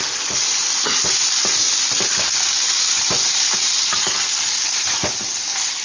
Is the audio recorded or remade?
recorded